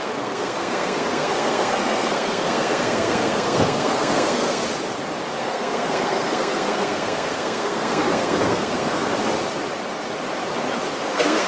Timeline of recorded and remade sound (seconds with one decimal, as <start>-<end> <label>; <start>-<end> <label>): 0.0-4.6 remade; 4.6-5.4 recorded; 5.4-9.1 remade; 9.1-11.1 recorded; 11.1-11.5 remade